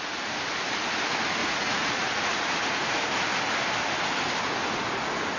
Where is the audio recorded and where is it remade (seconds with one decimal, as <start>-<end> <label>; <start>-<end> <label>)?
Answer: 0.0-1.4 recorded; 1.4-3.0 remade; 3.0-4.6 recorded; 4.6-5.4 remade